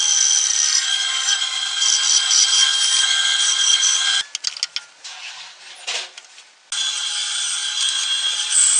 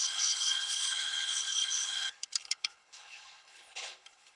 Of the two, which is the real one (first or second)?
first